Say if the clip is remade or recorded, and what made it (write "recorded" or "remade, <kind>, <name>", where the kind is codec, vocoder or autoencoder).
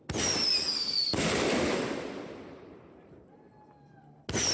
recorded